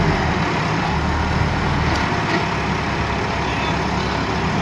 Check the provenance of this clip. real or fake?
real